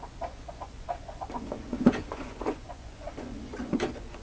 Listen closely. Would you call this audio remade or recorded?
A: remade